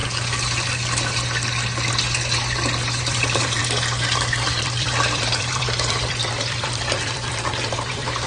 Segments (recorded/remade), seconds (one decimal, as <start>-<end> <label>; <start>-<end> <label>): 0.0-3.0 recorded; 3.0-3.6 remade; 3.6-4.6 recorded; 4.6-8.3 remade